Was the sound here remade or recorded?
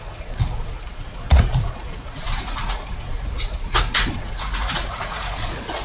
remade